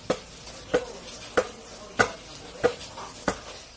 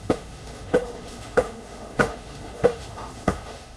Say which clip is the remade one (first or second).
second